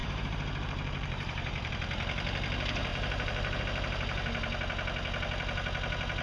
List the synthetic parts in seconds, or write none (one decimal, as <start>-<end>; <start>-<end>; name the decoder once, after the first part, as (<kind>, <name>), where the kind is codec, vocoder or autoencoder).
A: 0.0-1.7 (vocoder, BigVGAN v2); 2.9-3.6